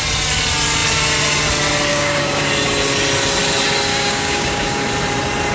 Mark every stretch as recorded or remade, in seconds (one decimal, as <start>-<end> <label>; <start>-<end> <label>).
0.0-1.9 recorded; 1.9-2.4 remade; 2.4-3.9 recorded; 3.9-4.8 remade; 4.8-5.5 recorded